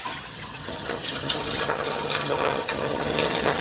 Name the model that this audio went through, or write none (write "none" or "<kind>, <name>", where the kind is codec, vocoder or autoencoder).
vocoder, HiFi-GAN